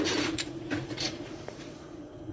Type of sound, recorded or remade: remade